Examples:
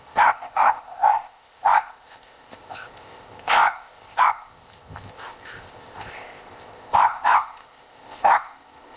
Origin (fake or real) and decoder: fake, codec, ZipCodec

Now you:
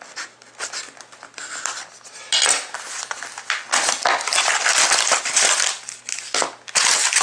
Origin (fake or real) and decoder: real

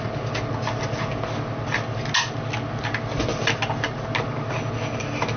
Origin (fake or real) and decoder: real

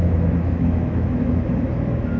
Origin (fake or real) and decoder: fake, autoencoder, DAC-VAE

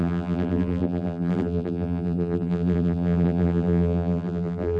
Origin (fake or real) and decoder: fake, vocoder, BigVGAN v2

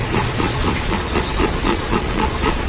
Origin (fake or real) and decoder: fake, vocoder, Vocos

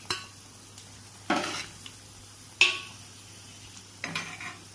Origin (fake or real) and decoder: real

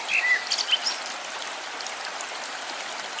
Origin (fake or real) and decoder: real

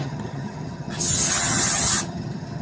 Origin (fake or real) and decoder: fake, vocoder, HiFi-GAN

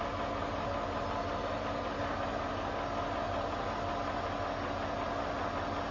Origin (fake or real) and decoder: real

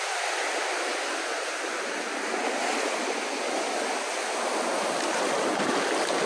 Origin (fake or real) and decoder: real